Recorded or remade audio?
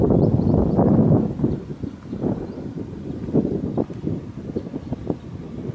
recorded